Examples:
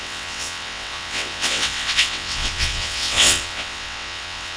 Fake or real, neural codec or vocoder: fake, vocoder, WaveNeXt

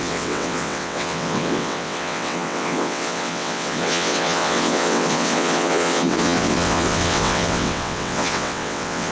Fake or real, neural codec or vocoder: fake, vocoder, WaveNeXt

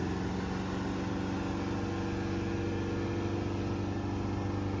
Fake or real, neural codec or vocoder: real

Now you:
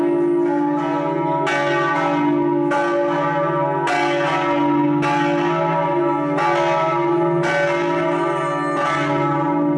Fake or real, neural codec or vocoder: real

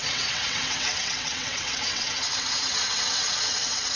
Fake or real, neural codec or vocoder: fake, vocoder, WaveNeXt